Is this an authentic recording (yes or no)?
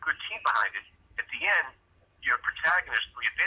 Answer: no